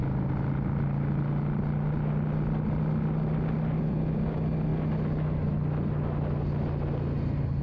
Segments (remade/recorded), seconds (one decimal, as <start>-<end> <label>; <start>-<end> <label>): 0.0-7.6 recorded